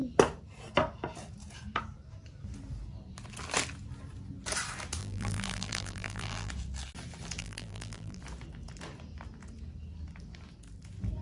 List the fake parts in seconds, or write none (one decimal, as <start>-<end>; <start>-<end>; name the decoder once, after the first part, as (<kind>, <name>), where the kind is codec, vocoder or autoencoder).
5.0-6.5 (vocoder, BigVGAN v2); 7.4-8.2